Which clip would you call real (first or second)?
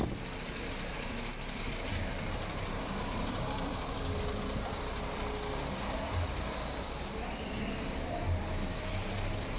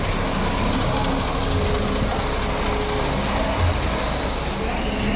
second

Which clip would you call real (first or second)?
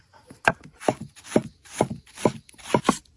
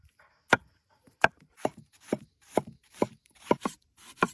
first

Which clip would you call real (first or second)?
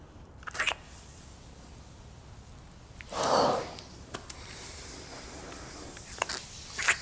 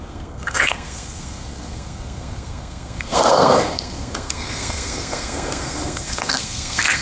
first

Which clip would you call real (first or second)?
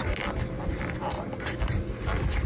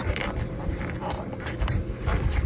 first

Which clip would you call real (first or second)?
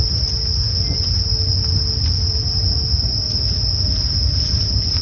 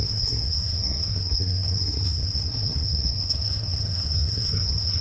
first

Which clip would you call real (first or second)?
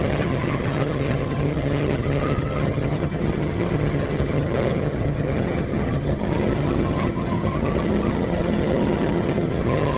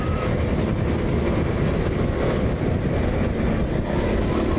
second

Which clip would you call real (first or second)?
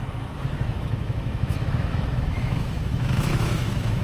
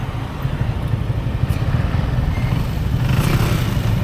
second